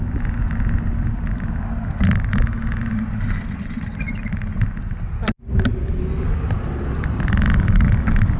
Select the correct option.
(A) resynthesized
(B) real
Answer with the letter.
B